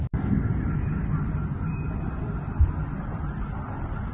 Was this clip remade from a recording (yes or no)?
no